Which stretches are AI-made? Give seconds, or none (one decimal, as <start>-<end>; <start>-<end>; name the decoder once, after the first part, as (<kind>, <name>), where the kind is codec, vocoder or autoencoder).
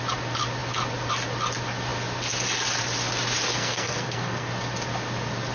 3.5-4.5 (codec, SNAC)